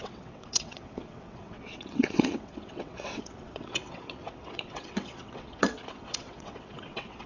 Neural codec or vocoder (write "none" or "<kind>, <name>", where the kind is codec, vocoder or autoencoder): vocoder, WaveNeXt